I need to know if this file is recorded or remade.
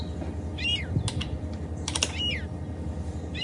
recorded